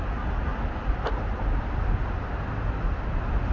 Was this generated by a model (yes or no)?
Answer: no